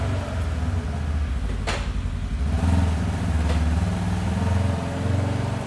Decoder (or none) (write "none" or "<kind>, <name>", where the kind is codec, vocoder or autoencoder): none